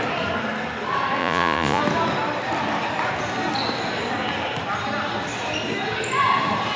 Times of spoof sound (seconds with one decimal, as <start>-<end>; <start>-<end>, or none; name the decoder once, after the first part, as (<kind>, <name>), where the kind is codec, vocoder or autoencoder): 1.2-1.8 (vocoder, Vocos)